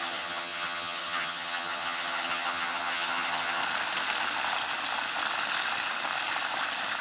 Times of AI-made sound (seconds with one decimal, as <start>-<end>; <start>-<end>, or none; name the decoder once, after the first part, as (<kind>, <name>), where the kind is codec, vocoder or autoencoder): 0.0-3.6 (vocoder, HiFi-GAN)